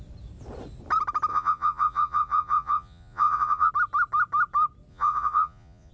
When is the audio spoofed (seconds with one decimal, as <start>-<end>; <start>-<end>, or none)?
1.3-3.7; 4.9-5.9